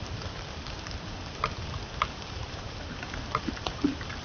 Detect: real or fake fake